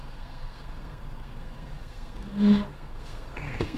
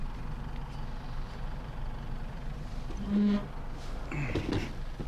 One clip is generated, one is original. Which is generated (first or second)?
first